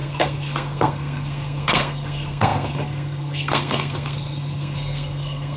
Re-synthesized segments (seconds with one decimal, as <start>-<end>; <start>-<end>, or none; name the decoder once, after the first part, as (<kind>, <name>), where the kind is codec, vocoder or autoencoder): 0.0-5.6 (codec, SNAC)